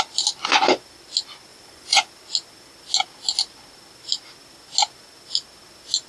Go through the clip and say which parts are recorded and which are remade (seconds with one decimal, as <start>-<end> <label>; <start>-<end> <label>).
0.0-1.5 recorded; 1.5-2.1 remade; 2.1-6.1 recorded